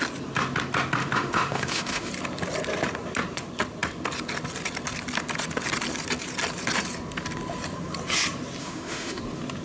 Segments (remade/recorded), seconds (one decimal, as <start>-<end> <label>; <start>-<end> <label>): 0.0-1.0 recorded; 1.0-2.1 remade; 2.1-8.6 recorded; 8.6-9.2 remade; 9.2-9.6 recorded